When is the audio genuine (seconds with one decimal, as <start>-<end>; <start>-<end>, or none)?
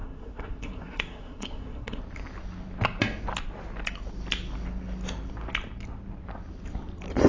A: 2.0-7.3